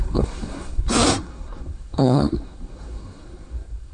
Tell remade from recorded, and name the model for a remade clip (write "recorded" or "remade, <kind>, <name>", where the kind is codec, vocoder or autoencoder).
remade, codec, SNAC